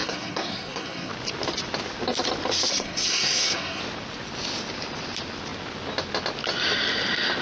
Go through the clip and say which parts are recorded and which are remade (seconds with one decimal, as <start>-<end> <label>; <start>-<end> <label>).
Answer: 0.0-1.1 remade; 1.1-2.7 recorded; 2.7-3.8 remade; 3.8-7.4 recorded